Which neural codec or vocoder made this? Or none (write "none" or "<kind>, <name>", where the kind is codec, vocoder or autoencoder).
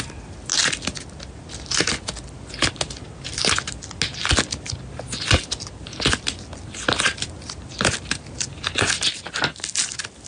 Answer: none